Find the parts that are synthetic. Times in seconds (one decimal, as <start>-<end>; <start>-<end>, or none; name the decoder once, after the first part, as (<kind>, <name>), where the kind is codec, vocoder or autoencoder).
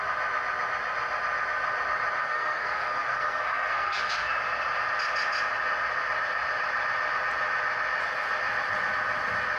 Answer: 2.2-4.3 (codec, SNAC)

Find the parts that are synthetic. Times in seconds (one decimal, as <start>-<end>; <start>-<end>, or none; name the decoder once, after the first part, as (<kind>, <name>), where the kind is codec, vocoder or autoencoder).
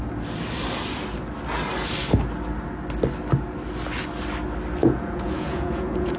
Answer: 4.8-6.2 (vocoder, Vocos)